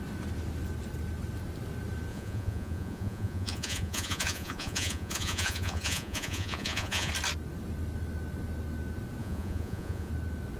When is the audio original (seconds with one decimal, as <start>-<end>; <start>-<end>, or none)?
0.0-2.1; 7.1-9.2; 10.1-10.6